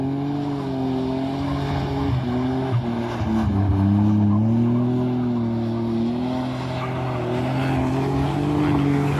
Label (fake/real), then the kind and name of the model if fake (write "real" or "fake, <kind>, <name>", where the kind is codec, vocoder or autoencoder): real